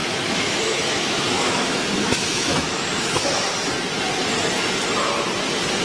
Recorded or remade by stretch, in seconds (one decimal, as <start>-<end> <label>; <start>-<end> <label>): 0.0-3.5 remade; 3.5-5.8 recorded